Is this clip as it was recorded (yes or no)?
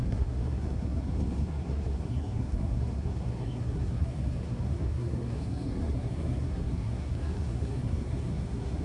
no